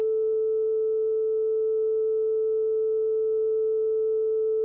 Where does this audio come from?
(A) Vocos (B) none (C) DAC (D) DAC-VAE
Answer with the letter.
B